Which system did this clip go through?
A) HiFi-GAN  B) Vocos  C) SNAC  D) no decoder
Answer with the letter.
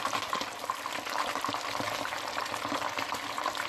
D